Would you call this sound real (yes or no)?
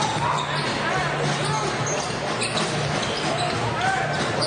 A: yes